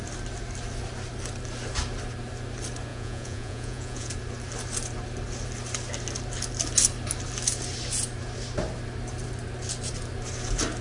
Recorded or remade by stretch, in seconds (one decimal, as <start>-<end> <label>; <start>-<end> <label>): 0.0-2.9 recorded; 2.9-4.1 remade; 4.1-10.8 recorded